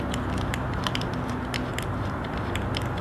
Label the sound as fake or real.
real